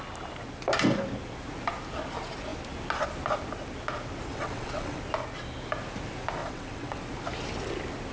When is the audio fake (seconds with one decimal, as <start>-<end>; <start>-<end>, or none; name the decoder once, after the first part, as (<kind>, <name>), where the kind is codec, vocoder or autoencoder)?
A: 4.3-5.0 (vocoder, WaveNeXt); 6.4-7.0